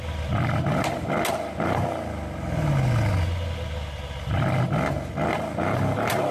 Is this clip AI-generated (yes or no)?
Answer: no